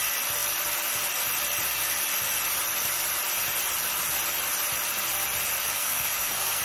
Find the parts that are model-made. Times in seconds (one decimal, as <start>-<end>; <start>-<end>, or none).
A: 5.7-6.6

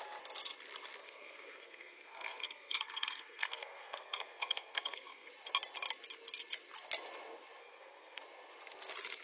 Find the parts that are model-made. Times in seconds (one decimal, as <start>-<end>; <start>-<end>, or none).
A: 1.0-5.3; 7.6-8.2

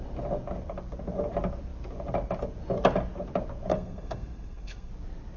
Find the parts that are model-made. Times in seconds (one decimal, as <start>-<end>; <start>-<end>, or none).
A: 3.7-4.9

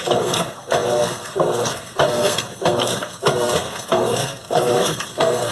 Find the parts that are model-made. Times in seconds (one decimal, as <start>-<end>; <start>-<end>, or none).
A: 0.0-5.5

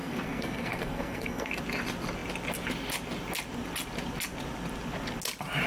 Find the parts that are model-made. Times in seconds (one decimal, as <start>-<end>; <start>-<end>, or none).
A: 0.0-1.6